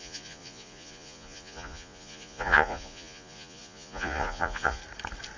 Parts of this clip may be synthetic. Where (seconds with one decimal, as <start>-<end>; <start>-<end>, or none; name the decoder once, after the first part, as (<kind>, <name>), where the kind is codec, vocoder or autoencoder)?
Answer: 0.0-4.8 (vocoder, Vocos)

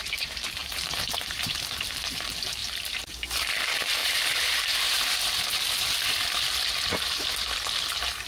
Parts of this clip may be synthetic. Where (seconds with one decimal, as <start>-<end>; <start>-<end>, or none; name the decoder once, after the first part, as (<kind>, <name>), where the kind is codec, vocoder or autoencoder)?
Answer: 0.6-1.5 (vocoder, BigVGAN v2); 2.6-3.1; 4.0-5.2

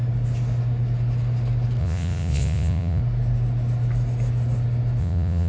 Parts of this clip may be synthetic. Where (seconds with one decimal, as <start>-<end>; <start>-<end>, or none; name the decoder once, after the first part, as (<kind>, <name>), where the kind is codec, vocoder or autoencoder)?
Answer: 1.8-3.0 (vocoder, Vocos); 5.0-5.5

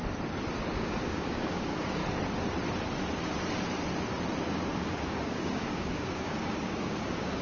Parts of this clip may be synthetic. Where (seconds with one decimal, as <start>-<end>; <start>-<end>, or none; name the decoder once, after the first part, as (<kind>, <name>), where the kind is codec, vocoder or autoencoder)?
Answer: 0.7-2.0 (codec, DAC); 4.8-7.4

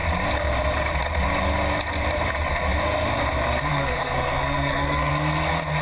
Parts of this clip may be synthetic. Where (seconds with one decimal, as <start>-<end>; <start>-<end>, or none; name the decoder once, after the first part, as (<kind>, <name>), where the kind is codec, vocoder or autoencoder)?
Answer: 3.7-5.1 (codec, SNAC)

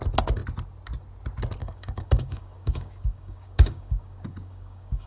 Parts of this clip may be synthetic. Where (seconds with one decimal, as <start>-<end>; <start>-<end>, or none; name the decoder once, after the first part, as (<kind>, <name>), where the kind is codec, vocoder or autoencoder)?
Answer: 1.6-5.1 (codec, DAC)